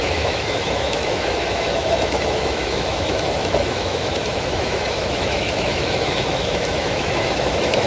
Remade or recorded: remade